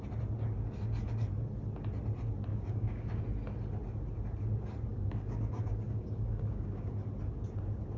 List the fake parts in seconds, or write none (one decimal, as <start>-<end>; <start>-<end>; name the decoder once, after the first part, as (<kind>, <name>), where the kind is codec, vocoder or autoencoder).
2.5-3.2 (codec, DAC); 4.9-6.9